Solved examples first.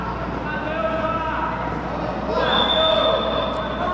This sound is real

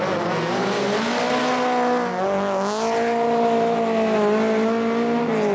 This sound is real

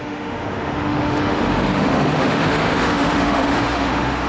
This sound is fake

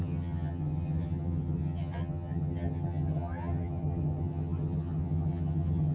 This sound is fake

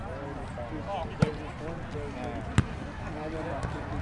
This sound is real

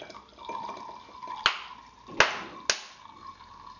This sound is real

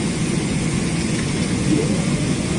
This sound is fake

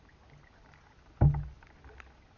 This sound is real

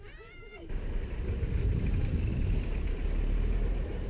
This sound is fake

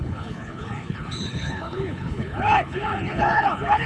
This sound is fake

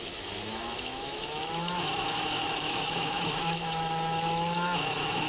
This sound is fake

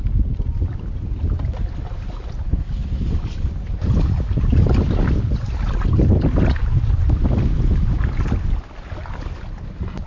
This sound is real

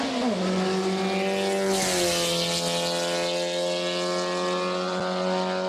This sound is real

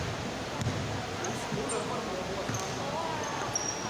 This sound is real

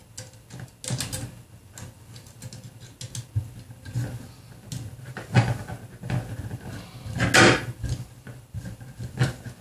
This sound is real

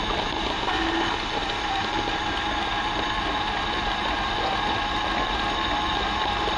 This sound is real